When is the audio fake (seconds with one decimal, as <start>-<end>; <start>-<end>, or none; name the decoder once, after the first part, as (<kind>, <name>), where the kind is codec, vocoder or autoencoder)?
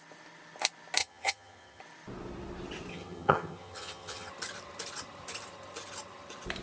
1.0-1.8 (vocoder, HiFi-GAN); 2.9-4.3